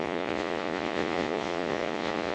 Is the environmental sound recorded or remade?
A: remade